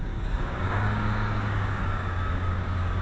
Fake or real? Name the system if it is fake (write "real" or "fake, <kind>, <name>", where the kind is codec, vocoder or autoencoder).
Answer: fake, codec, DAC